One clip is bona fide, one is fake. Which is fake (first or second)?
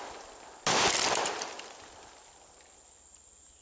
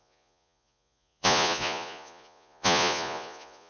second